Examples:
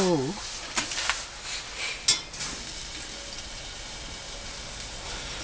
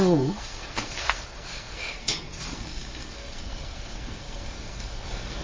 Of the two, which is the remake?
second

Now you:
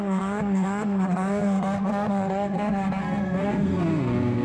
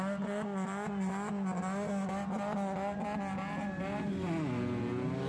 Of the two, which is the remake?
first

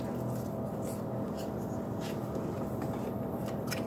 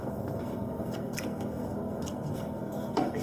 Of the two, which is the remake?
second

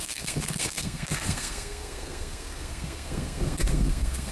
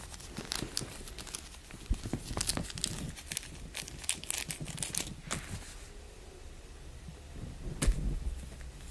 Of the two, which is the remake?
first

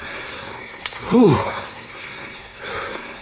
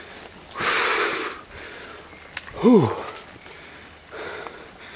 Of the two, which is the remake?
first